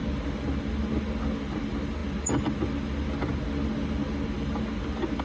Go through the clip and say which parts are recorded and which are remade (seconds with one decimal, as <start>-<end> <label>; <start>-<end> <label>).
0.0-5.2 recorded